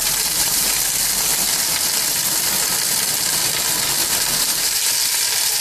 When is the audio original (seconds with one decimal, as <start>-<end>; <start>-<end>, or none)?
0.7-4.0; 4.9-5.6